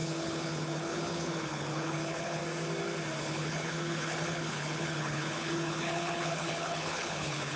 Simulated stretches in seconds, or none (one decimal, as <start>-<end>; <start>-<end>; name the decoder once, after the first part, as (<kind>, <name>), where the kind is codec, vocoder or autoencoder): 0.0-2.4 (codec, HILCodec); 3.2-7.6